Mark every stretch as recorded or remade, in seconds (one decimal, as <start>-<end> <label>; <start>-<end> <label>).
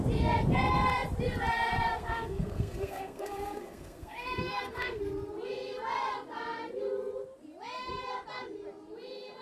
0.0-1.9 recorded; 1.9-5.0 remade; 5.0-9.4 recorded